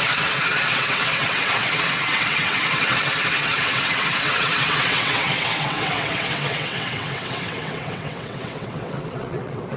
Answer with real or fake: fake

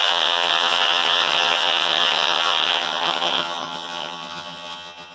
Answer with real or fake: fake